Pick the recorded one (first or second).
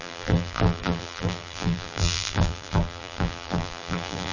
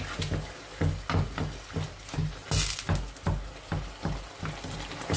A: second